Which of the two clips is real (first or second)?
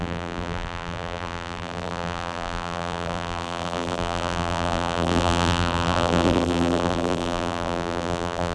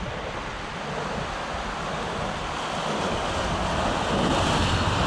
second